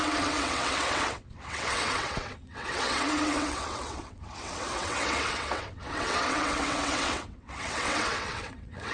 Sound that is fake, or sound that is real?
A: fake